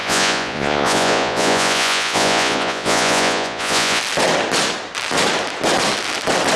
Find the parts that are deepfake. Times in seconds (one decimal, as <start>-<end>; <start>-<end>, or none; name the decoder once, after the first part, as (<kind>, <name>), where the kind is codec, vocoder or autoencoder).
0.0-4.0 (vocoder, Vocos)